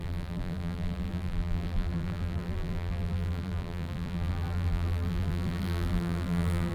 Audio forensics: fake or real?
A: fake